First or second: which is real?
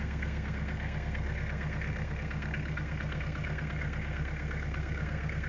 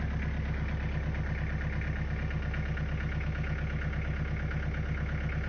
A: second